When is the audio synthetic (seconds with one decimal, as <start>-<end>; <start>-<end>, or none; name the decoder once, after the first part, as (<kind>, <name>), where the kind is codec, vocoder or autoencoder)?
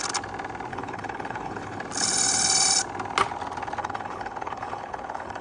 0.7-1.8 (codec, HILCodec); 3.8-5.4